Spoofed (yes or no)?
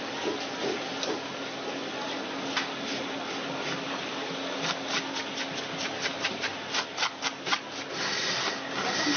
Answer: no